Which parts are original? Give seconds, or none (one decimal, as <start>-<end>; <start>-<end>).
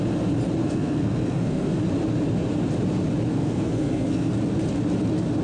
0.0-0.6; 1.8-3.3; 4.3-5.4